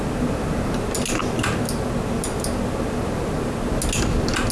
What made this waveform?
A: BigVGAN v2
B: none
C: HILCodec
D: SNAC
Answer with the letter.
B